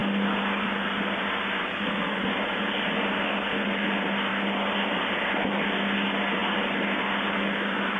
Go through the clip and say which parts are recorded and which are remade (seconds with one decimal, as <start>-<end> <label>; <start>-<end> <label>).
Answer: 0.0-1.7 recorded; 1.7-2.2 remade; 2.2-8.0 recorded